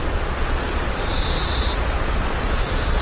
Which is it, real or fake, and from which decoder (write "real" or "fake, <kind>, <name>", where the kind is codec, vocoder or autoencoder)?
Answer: fake, vocoder, Vocos